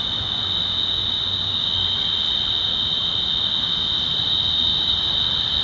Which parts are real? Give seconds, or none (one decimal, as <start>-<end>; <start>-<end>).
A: 0.0-5.6